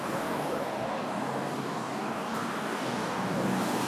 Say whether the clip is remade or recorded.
remade